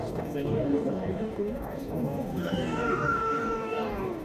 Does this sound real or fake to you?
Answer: fake